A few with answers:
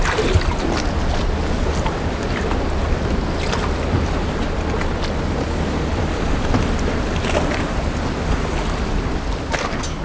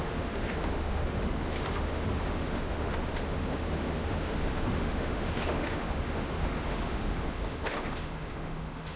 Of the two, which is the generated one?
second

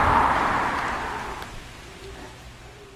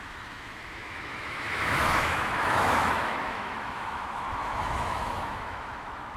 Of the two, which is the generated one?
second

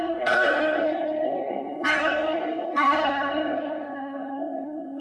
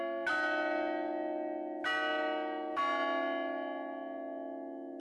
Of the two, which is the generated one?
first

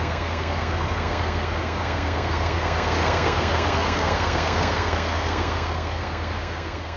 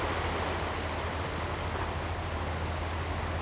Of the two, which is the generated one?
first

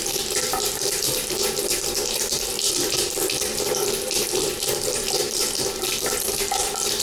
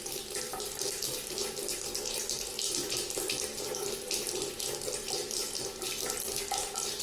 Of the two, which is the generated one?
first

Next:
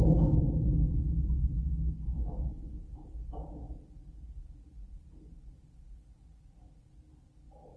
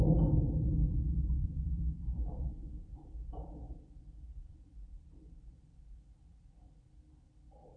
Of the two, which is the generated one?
second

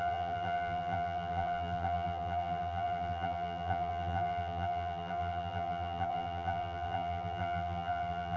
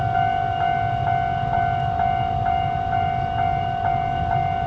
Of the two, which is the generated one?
first